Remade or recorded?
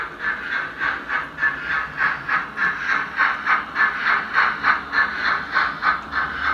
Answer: recorded